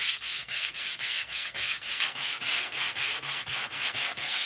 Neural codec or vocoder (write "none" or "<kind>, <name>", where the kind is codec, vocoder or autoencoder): codec, SNAC